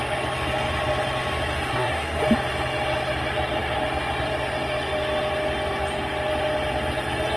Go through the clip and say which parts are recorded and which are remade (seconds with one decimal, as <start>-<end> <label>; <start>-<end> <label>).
0.0-1.7 recorded; 1.7-2.2 remade; 2.2-7.4 recorded